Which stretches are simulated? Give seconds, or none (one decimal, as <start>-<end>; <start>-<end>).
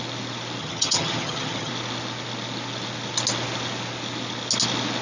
0.6-1.7